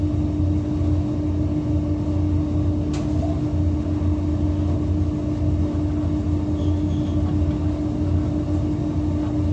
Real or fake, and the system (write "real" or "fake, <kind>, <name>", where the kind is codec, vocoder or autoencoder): real